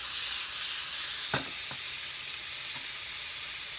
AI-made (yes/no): no